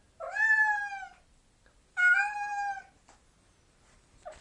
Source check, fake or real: real